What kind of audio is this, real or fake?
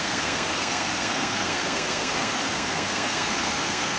fake